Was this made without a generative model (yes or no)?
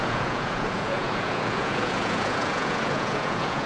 no